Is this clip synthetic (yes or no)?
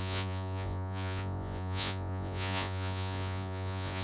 yes